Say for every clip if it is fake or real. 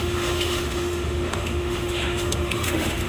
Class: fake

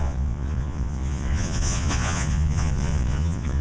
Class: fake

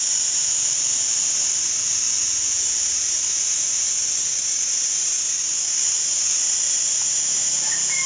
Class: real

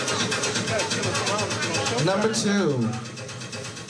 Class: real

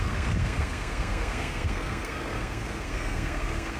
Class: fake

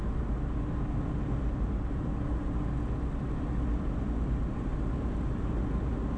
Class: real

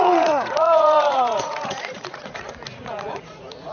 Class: fake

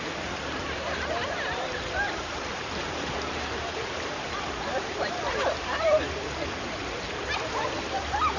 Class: fake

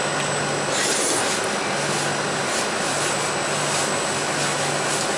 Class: real